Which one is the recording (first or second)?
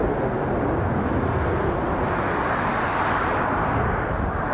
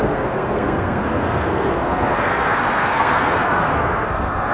first